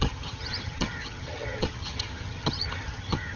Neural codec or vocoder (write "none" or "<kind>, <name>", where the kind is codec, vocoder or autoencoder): vocoder, HiFi-GAN